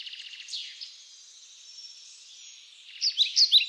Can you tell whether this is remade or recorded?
recorded